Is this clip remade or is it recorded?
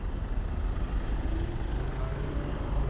recorded